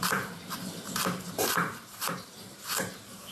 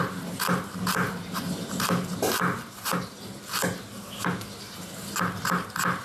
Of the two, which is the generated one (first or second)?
first